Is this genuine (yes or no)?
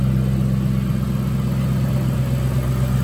yes